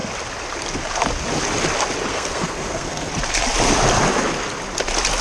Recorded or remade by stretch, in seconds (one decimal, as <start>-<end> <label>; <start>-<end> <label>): 0.0-2.1 recorded; 2.1-3.1 remade; 3.1-5.2 recorded